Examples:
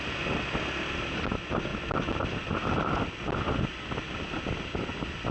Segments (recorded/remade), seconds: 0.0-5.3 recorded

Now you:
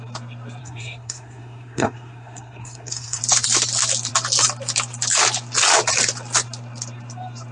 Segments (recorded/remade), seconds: 0.0-0.6 recorded; 0.6-3.2 remade; 3.2-7.5 recorded